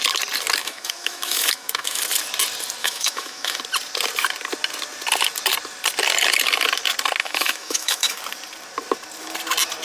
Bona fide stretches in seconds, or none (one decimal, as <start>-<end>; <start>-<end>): 0.0-0.6; 2.0-2.8; 3.6-7.2; 8.2-9.8